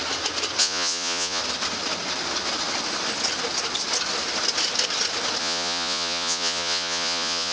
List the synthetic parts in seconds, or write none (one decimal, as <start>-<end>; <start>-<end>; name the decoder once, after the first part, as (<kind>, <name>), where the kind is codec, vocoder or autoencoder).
0.6-1.4 (vocoder, Vocos); 5.4-7.5